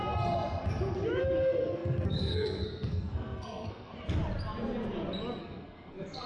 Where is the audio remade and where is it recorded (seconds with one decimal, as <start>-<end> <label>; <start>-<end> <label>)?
0.0-1.2 recorded; 1.2-3.9 remade; 3.9-5.4 recorded; 5.4-6.3 remade